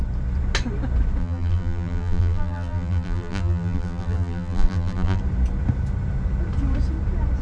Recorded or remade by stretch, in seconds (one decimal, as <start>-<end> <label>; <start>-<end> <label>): 0.0-1.2 recorded; 1.2-5.2 remade; 5.2-7.4 recorded